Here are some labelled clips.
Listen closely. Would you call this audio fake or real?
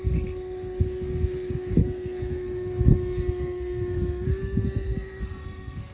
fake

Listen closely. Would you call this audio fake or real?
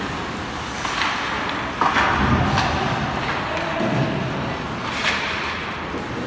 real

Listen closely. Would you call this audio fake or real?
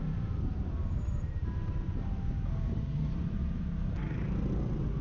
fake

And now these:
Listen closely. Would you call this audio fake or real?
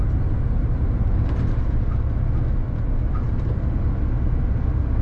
real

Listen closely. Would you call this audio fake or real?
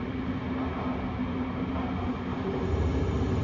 real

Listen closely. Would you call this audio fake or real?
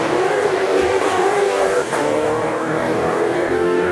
fake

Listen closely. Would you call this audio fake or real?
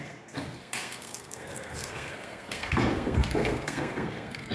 fake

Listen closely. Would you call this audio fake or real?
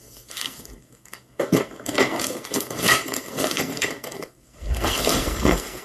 fake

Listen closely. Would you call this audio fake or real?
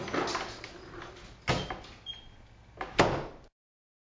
real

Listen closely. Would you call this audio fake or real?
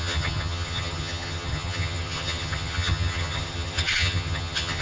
fake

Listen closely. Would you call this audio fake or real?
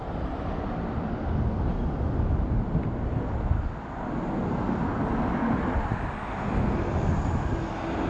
real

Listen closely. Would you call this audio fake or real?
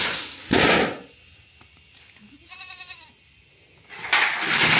real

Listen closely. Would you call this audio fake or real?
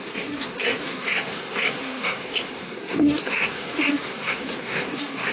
fake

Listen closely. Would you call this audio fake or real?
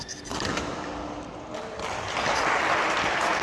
real